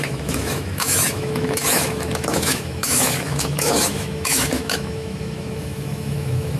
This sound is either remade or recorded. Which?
remade